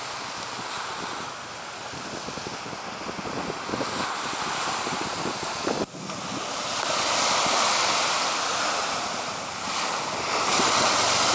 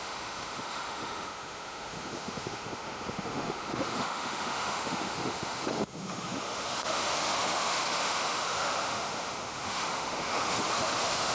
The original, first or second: first